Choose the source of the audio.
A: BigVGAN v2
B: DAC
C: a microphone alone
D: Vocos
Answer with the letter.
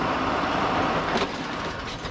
A